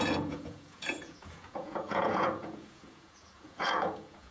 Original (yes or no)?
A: no